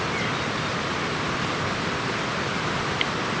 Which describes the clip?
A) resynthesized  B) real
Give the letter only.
B